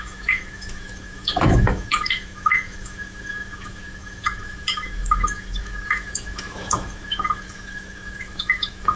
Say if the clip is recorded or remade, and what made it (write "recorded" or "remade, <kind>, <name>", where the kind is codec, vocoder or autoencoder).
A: remade, autoencoder, DAC-VAE